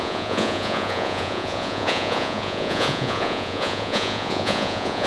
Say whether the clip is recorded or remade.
remade